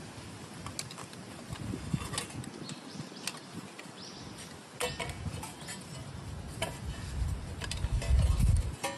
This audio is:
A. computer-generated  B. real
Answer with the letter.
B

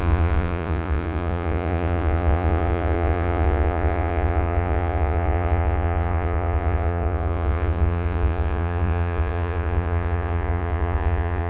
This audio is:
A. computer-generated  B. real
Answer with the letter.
A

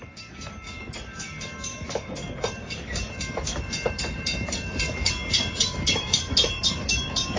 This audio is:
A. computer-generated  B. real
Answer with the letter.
A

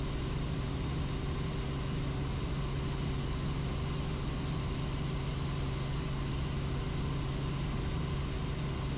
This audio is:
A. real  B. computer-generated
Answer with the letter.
A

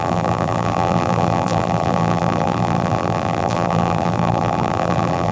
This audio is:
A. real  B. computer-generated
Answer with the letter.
B